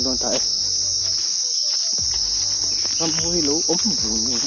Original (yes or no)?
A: yes